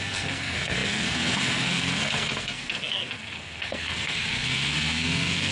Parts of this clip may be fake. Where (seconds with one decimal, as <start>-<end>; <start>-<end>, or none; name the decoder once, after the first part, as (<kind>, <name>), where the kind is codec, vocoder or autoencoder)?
0.0-5.5 (codec, SNAC)